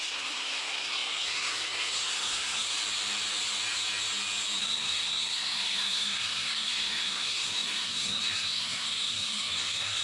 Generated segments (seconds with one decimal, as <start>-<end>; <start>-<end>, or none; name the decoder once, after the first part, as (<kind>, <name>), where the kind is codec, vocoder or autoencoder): 0.0-2.7 (codec, SNAC); 4.6-10.0